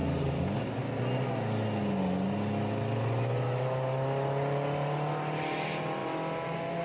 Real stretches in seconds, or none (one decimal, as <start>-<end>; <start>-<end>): 0.0-6.8